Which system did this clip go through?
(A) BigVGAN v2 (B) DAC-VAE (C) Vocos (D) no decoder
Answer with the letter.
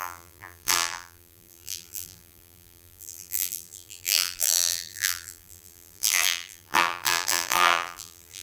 A